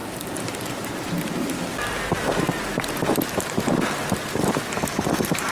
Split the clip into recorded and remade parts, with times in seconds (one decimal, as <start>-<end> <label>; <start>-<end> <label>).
0.0-1.6 remade; 1.6-5.5 recorded